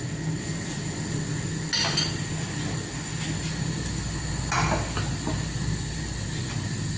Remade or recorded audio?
recorded